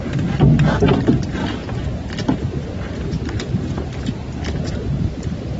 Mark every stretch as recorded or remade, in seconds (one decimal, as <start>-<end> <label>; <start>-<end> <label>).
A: 0.0-5.6 recorded